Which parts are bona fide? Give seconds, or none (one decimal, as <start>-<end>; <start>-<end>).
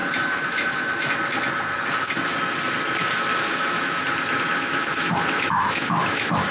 1.1-3.3; 4.0-4.5